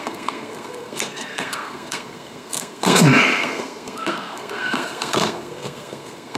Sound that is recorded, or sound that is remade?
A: remade